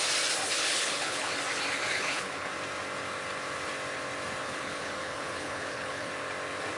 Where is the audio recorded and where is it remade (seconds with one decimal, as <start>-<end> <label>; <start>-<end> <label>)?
0.0-0.6 recorded; 0.6-1.3 remade; 1.3-1.9 recorded; 1.9-2.5 remade; 2.5-4.4 recorded; 4.4-6.1 remade; 6.1-6.8 recorded